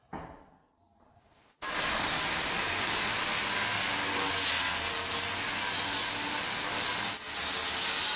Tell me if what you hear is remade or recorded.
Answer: recorded